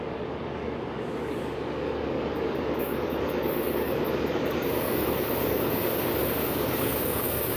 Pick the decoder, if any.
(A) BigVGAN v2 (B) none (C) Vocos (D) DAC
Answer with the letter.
D